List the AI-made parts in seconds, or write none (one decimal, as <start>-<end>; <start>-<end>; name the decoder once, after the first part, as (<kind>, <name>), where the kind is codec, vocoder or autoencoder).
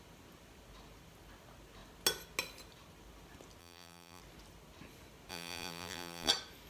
3.6-4.2 (vocoder, BigVGAN v2); 5.3-6.3